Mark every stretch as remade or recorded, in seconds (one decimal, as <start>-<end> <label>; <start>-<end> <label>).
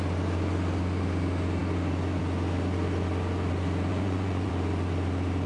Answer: 0.0-3.9 recorded; 3.9-4.5 remade; 4.5-5.5 recorded